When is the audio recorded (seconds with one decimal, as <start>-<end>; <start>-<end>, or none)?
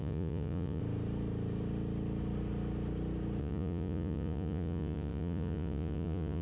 0.8-3.4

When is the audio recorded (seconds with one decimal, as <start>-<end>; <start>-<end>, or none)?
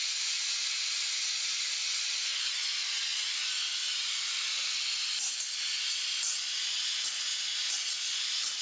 0.0-8.6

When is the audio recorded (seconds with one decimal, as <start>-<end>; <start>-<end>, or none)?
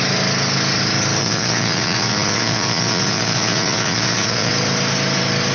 0.0-1.2; 4.5-5.5